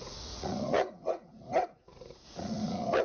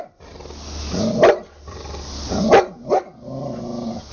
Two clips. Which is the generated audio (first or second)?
first